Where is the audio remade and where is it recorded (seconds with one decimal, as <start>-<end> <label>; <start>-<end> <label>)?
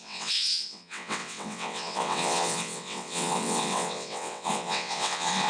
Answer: 0.0-5.5 remade